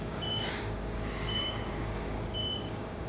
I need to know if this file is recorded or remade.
remade